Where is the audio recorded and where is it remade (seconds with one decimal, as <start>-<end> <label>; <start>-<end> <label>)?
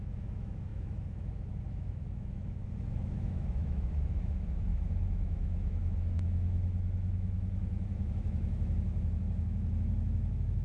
0.0-10.6 remade